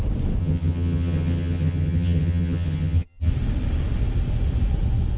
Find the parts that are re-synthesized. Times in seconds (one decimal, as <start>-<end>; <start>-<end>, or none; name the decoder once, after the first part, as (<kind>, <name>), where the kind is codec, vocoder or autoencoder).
0.4-3.3 (vocoder, HiFi-GAN)